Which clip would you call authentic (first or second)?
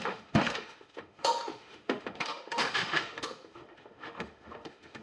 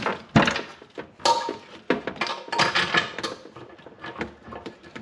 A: second